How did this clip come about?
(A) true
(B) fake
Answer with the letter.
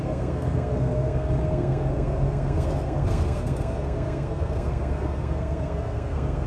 B